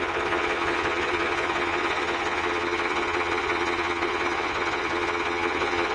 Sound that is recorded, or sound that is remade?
remade